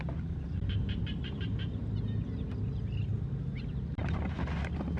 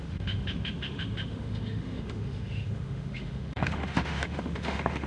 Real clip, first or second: first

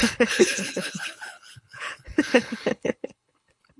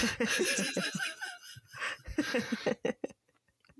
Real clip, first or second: second